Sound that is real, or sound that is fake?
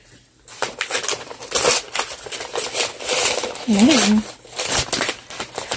real